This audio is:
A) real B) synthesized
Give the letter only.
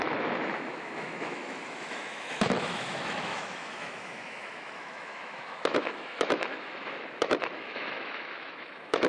B